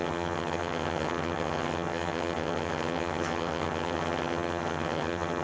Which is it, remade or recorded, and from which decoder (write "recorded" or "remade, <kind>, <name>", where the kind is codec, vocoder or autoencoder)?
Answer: remade, vocoder, HiFi-GAN